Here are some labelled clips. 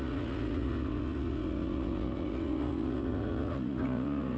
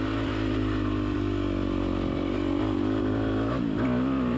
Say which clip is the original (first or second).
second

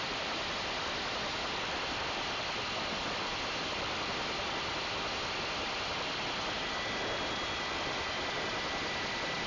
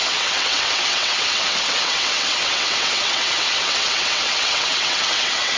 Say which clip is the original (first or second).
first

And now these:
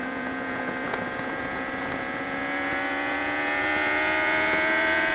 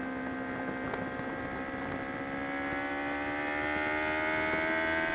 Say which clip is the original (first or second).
second